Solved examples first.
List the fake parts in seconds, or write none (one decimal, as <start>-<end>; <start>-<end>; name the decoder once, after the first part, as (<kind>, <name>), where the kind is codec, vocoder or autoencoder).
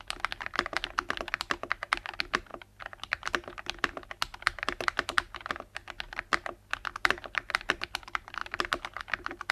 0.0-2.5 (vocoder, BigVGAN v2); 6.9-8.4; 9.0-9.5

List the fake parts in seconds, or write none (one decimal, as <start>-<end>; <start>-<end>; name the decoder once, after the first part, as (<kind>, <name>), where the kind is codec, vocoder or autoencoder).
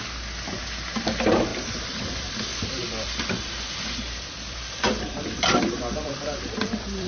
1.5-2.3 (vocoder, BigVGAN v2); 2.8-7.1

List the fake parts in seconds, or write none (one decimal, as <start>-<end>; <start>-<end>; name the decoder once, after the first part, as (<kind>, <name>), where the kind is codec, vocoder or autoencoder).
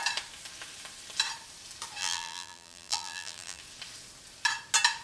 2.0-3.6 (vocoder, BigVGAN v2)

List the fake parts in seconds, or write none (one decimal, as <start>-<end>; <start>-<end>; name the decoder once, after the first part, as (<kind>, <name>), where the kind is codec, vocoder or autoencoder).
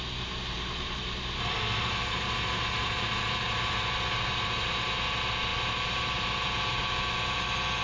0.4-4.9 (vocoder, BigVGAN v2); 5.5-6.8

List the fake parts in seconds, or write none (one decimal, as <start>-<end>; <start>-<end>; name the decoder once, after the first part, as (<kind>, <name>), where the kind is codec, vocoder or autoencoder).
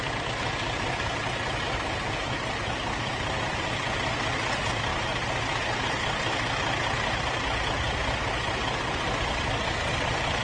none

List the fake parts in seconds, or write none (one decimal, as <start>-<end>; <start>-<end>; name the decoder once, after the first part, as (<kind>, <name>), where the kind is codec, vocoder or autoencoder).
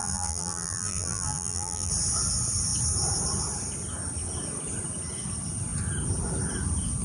0.0-1.9 (vocoder, BigVGAN v2)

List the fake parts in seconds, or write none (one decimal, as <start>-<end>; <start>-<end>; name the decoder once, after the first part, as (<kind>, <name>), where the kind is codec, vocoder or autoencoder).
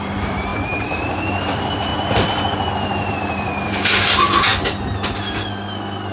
0.0-0.5 (vocoder, BigVGAN v2); 1.4-1.9; 3.1-4.5